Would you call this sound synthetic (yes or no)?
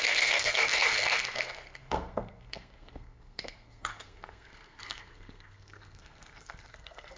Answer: yes